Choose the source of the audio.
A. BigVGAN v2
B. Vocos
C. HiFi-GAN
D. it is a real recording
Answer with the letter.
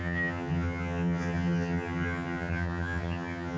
C